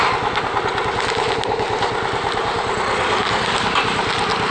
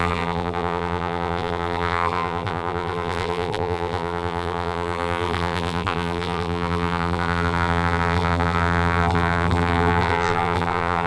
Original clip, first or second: first